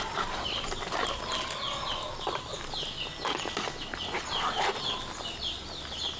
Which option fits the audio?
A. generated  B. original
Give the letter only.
B